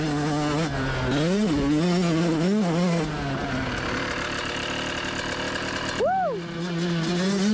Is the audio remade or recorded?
recorded